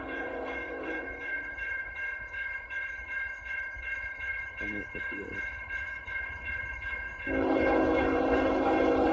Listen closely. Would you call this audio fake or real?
fake